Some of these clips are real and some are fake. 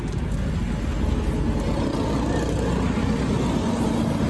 real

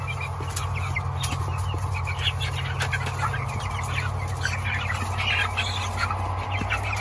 real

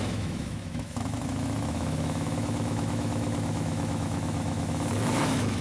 fake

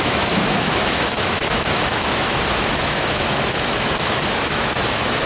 fake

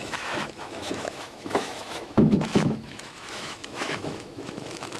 fake